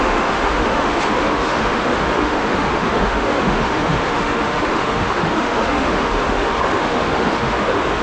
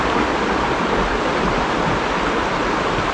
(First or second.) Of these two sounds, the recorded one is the second